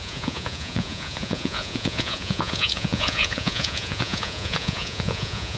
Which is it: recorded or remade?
remade